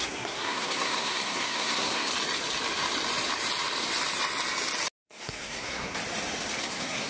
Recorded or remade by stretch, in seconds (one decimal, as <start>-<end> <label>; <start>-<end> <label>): 0.0-2.1 remade; 2.1-5.0 recorded; 5.0-6.0 remade; 6.0-6.6 recorded; 6.6-7.1 remade

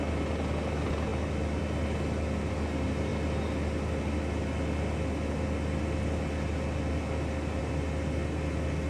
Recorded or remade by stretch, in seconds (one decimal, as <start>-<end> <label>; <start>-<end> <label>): 0.0-8.9 recorded

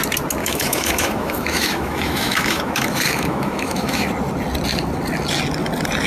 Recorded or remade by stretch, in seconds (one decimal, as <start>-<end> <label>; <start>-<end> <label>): 0.0-0.4 recorded; 0.4-4.1 remade; 4.1-6.1 recorded

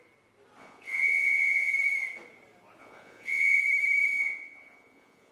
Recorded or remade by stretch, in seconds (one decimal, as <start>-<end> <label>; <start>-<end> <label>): 0.0-0.6 recorded; 0.6-1.7 remade; 1.7-2.8 recorded; 2.8-3.6 remade; 3.6-4.1 recorded; 4.1-5.3 remade

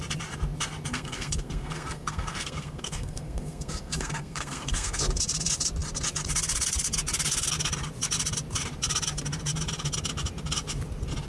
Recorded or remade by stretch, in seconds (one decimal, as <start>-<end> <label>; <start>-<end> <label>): 0.0-0.9 recorded; 0.9-5.0 remade; 5.0-11.3 recorded

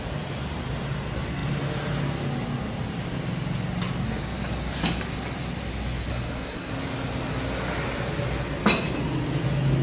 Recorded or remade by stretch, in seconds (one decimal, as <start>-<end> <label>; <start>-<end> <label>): 0.0-6.1 recorded; 6.1-6.7 remade; 6.7-9.8 recorded

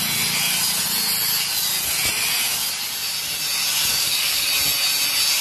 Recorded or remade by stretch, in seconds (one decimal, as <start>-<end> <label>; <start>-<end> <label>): 0.0-3.9 recorded; 3.9-4.5 remade; 4.5-5.4 recorded

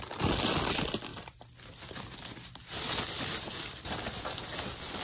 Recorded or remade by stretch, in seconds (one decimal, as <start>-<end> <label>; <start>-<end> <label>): 0.0-5.0 recorded